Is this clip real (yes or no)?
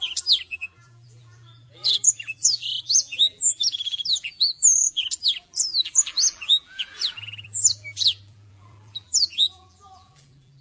no